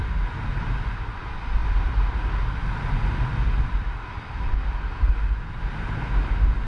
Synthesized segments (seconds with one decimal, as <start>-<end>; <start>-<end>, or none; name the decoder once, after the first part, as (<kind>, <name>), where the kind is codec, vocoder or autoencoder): none